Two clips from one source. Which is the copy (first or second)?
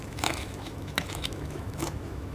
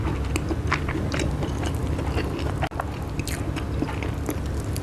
first